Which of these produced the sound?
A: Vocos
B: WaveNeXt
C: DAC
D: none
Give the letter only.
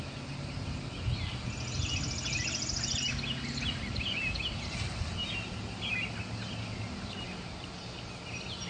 D